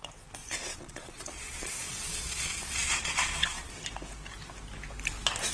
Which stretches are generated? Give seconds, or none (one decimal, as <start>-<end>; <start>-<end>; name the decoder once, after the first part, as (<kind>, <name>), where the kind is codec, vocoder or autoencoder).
0.4-3.7 (vocoder, Vocos)

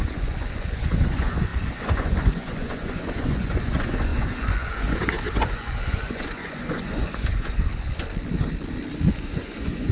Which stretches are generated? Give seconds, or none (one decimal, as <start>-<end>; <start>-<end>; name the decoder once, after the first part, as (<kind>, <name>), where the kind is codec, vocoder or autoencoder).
0.0-7.7 (vocoder, Vocos); 9.2-9.9

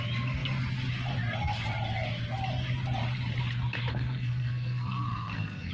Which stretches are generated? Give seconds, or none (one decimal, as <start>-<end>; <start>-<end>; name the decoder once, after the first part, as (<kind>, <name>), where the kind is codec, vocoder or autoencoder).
3.9-5.7 (codec, SNAC)

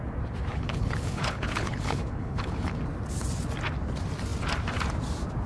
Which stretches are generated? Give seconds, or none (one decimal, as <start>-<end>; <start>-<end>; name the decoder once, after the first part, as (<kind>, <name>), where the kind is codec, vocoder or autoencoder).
0.5-2.8 (codec, HILCodec)

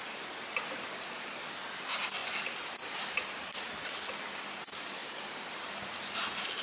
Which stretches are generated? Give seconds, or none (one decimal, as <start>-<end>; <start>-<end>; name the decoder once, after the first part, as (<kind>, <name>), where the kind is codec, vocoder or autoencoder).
0.0-0.7 (vocoder, BigVGAN v2); 5.0-5.5

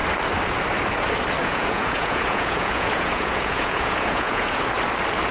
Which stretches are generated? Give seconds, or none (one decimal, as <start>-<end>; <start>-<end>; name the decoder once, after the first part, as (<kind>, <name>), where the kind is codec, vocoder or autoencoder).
1.4-4.6 (vocoder, Vocos)